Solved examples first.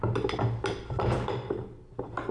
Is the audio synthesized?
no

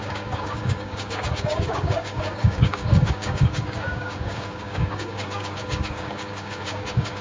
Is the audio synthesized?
yes